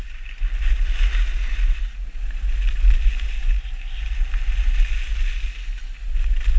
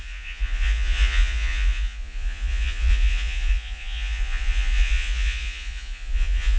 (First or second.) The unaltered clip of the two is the first